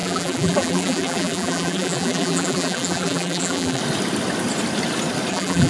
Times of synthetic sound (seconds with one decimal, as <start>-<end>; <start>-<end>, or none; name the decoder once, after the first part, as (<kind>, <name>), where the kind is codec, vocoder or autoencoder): 0.0-3.8 (vocoder, BigVGAN v2); 5.3-5.7